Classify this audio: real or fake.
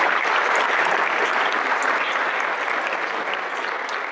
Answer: real